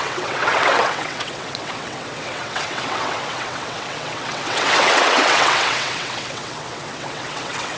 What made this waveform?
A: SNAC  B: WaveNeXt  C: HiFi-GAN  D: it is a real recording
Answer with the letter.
B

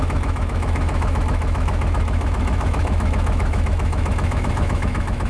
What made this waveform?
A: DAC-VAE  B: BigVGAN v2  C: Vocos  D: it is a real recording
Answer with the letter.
A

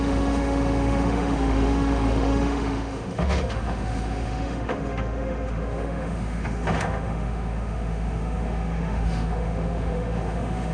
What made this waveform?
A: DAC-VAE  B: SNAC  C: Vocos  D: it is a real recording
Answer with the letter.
A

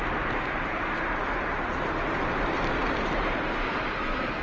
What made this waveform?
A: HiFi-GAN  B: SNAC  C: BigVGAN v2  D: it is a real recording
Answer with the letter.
D